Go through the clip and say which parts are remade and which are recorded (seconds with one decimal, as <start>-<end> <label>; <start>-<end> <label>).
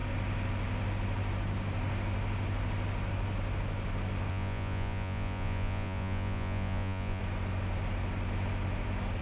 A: 0.0-4.3 recorded; 4.3-7.2 remade; 7.2-9.2 recorded